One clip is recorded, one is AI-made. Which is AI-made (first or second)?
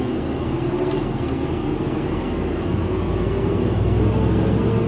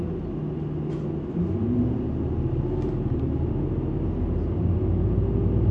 first